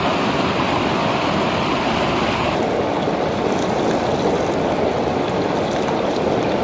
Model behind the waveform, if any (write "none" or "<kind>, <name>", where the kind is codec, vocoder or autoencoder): none